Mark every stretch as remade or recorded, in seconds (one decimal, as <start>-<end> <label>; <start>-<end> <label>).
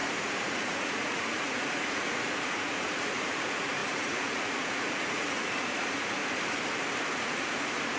0.0-6.2 remade; 6.2-7.1 recorded; 7.1-8.0 remade